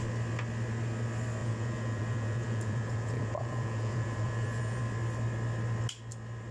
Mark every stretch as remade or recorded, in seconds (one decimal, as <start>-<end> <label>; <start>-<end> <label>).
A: 0.0-1.4 recorded; 1.4-4.8 remade; 4.8-6.5 recorded